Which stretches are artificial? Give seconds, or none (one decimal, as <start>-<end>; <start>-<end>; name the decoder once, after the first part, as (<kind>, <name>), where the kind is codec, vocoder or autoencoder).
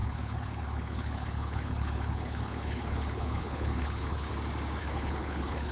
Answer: 0.0-4.3 (codec, HILCodec); 4.8-5.7